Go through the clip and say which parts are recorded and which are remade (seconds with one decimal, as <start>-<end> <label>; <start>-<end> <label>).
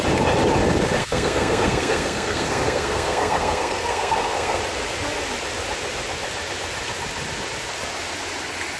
0.0-1.0 recorded; 1.0-4.6 remade; 4.6-8.8 recorded